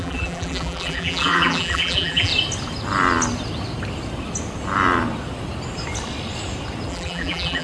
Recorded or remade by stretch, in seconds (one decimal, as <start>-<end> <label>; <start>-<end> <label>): 0.0-2.3 remade; 2.3-6.9 recorded; 6.9-7.6 remade